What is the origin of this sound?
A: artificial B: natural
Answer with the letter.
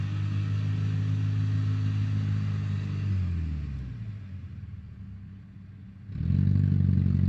B